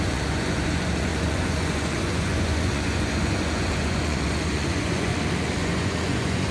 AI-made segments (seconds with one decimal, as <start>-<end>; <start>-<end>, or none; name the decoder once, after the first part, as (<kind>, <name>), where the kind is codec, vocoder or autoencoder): 0.0-5.1 (vocoder, Vocos); 5.6-6.5